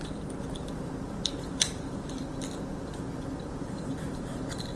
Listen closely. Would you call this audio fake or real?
fake